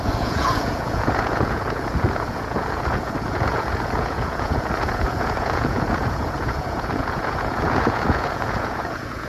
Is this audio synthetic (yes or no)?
yes